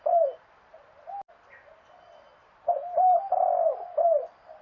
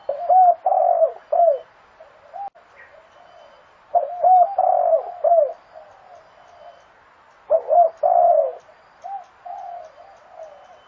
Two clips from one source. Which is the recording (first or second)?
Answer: second